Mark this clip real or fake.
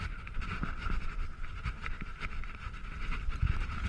real